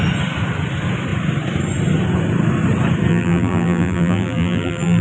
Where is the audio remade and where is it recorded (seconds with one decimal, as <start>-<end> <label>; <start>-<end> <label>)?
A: 0.0-3.1 recorded; 3.1-5.0 remade